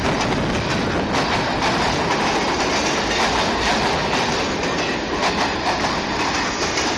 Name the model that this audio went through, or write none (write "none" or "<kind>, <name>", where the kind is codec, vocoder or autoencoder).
none